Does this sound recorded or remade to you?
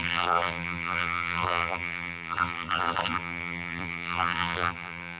remade